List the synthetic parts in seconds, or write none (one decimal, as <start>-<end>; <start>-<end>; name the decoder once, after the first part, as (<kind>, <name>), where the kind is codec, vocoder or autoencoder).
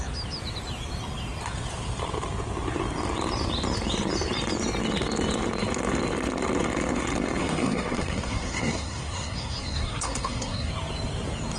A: 7.4-10.7 (codec, SNAC)